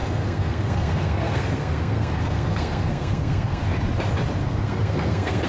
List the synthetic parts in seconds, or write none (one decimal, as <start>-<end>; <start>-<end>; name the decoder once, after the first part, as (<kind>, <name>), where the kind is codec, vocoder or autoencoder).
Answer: 0.0-3.6 (codec, SNAC); 4.4-5.5